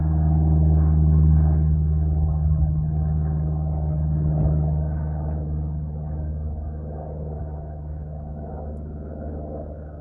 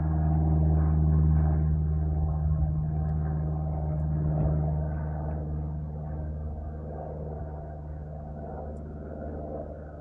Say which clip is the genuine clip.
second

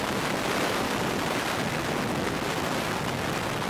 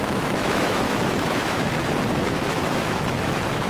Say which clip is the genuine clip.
first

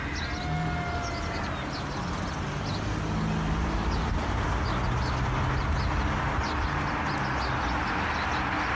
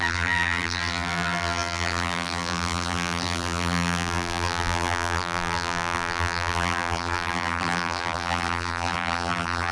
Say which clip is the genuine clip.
first